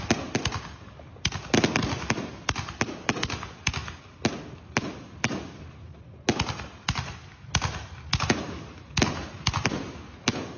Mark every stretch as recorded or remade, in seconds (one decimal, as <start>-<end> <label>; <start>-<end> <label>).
0.0-10.6 recorded